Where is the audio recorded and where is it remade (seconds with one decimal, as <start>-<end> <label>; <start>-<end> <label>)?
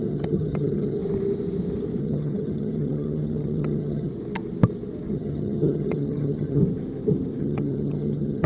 0.0-1.0 remade; 1.0-2.0 recorded; 2.0-4.1 remade; 4.1-5.1 recorded; 5.1-6.6 remade; 6.6-7.4 recorded; 7.4-8.5 remade